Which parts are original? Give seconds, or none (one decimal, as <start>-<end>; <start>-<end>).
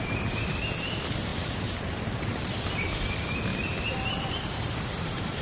0.0-1.3; 2.7-3.5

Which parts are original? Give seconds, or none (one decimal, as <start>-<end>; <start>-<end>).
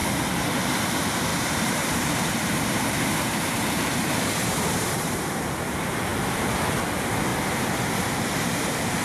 0.0-1.3; 5.4-7.3